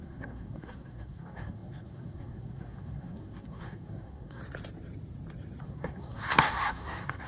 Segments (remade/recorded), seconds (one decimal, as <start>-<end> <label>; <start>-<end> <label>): 0.0-4.4 remade; 4.4-5.6 recorded; 5.6-7.3 remade